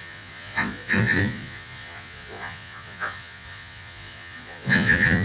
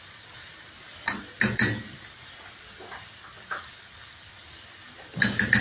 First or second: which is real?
second